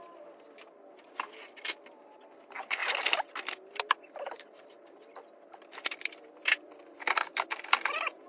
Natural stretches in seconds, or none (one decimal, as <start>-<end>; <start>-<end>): 0.0-8.3